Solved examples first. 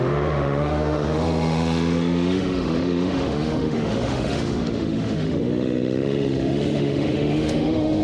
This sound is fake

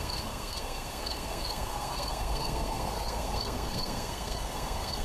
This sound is fake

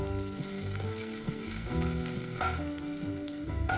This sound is fake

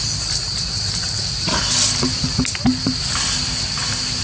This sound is real